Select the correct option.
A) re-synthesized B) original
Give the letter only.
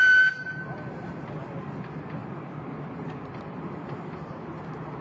B